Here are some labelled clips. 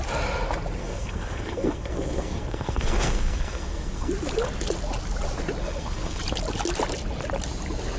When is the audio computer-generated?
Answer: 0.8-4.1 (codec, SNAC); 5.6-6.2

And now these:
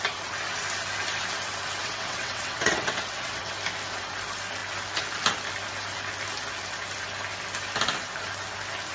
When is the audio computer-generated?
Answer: 1.8-3.5 (vocoder, WaveNeXt)

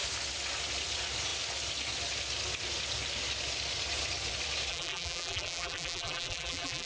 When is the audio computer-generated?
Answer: 4.7-6.9 (vocoder, BigVGAN v2)

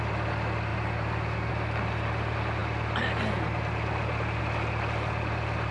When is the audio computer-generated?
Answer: none

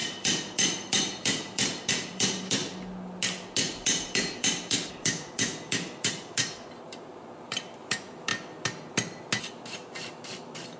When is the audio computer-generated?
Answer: 0.0-2.6 (vocoder, BigVGAN v2); 3.6-8.3; 10.2-10.8

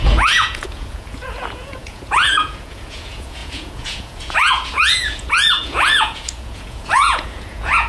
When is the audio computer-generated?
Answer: 0.0-7.9 (vocoder, Vocos)